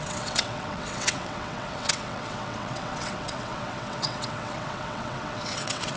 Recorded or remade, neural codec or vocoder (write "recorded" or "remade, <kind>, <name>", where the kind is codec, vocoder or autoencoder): remade, vocoder, WaveNeXt